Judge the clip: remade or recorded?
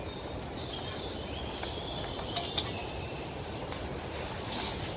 recorded